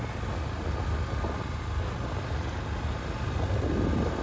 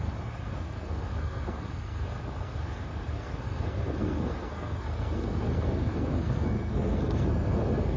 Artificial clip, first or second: second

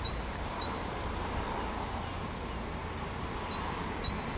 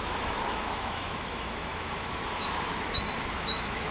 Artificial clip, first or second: second